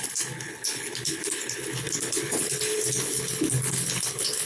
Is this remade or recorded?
remade